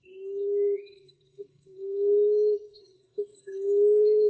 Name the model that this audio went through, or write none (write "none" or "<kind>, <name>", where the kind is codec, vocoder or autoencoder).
codec, SNAC